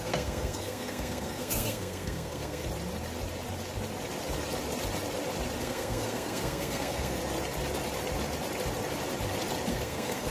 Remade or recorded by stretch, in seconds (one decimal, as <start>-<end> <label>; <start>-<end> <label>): 0.0-2.6 remade; 2.6-5.6 recorded; 5.6-7.2 remade; 7.2-9.7 recorded; 9.7-10.3 remade